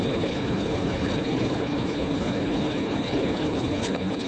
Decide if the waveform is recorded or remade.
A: remade